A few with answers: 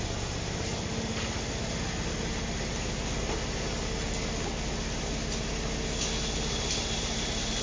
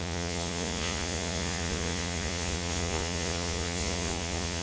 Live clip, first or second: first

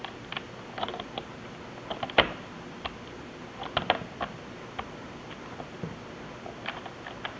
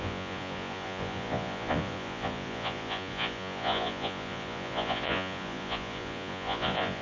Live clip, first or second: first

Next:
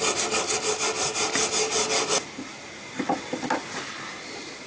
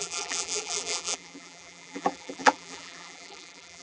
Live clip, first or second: first